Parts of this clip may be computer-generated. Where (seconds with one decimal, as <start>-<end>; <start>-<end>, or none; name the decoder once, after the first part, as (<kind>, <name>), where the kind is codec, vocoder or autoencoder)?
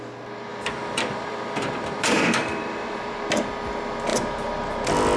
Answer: 0.5-3.3 (vocoder, BigVGAN v2); 4.1-4.7